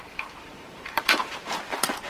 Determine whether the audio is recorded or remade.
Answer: remade